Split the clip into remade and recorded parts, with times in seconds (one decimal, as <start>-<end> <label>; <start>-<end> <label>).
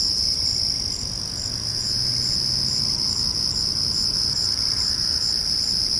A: 0.0-6.0 remade